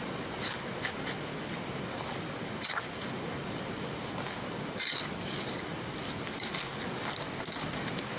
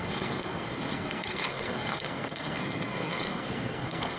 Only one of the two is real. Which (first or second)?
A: first